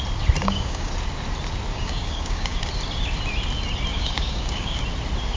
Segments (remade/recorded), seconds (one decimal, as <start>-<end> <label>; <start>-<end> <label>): 0.0-0.4 recorded; 0.4-0.9 remade; 0.9-1.7 recorded; 1.7-2.6 remade; 2.6-3.9 recorded; 3.9-4.8 remade; 4.8-5.4 recorded

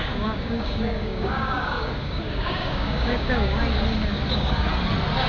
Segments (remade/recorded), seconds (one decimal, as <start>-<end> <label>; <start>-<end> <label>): 0.0-3.6 remade; 3.6-4.3 recorded; 4.3-4.7 remade; 4.7-5.3 recorded

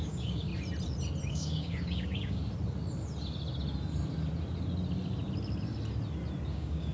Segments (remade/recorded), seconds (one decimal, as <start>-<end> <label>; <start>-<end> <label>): 0.0-0.5 remade; 0.5-1.3 recorded; 1.3-2.4 remade; 2.4-6.5 recorded; 6.5-6.9 remade